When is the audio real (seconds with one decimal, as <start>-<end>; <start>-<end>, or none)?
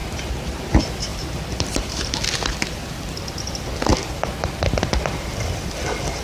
0.0-1.1; 2.2-6.2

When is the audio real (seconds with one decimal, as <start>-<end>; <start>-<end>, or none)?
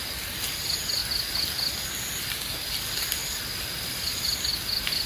0.0-5.1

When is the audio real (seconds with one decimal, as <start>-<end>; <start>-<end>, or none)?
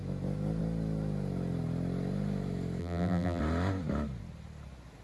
0.0-2.8; 3.4-5.0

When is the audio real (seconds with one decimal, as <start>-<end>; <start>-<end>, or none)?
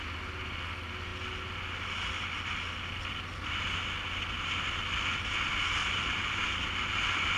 0.0-5.8; 6.6-7.4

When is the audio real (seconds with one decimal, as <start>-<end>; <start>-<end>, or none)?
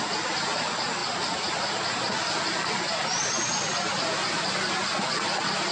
0.0-5.7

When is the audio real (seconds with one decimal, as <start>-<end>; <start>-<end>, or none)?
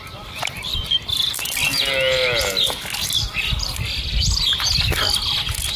0.0-5.8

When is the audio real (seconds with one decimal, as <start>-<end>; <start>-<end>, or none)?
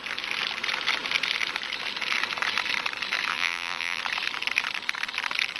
0.0-3.3; 4.0-5.6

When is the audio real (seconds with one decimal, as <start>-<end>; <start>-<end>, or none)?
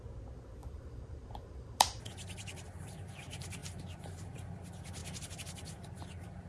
0.0-0.6; 2.0-6.5